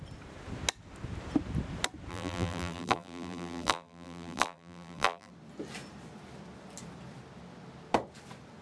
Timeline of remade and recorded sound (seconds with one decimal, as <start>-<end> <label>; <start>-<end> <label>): 0.0-2.1 recorded; 2.1-5.3 remade; 5.3-8.6 recorded